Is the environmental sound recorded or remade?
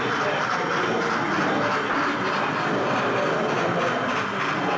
recorded